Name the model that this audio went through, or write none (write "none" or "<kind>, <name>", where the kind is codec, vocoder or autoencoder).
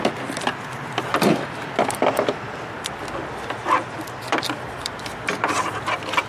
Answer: none